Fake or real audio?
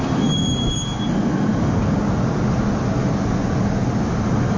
real